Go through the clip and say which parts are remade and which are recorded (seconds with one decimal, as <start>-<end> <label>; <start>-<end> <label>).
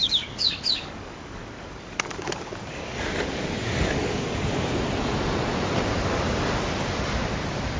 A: 0.0-4.7 remade; 4.7-7.8 recorded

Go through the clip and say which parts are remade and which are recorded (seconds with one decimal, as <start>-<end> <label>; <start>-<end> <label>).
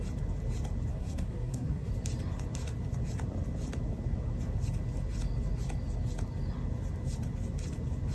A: 0.0-0.9 recorded; 0.9-1.9 remade; 1.9-8.1 recorded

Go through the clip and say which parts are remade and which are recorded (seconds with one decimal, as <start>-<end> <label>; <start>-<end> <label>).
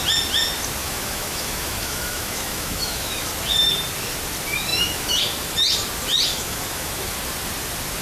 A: 0.0-0.8 recorded; 0.8-3.3 remade; 3.3-4.7 recorded; 4.7-5.2 remade; 5.2-6.3 recorded; 6.3-6.9 remade; 6.9-8.0 recorded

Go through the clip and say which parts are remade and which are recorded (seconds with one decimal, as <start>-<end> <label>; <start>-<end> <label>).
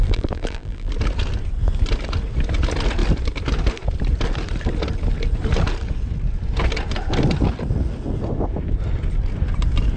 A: 0.0-0.9 remade; 0.9-10.0 recorded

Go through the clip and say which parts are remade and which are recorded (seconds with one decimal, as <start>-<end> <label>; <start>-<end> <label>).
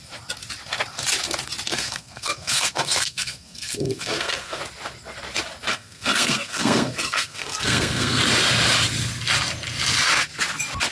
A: 0.0-1.7 recorded; 1.7-4.6 remade; 4.6-5.7 recorded; 5.7-8.2 remade; 8.2-10.9 recorded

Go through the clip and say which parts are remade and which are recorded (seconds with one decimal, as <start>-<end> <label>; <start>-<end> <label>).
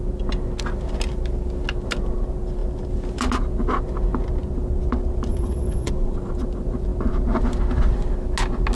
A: 0.0-5.3 recorded; 5.3-5.9 remade; 5.9-8.8 recorded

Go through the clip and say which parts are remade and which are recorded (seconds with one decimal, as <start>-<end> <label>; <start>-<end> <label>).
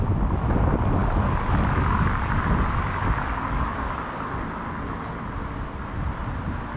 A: 0.0-6.8 recorded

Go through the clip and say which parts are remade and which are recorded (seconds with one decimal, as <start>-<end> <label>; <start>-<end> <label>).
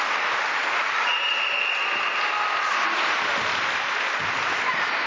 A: 0.0-0.6 recorded; 0.6-1.3 remade; 1.3-5.1 recorded